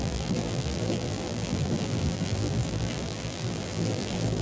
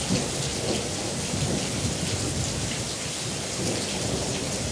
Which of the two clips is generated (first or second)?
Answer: first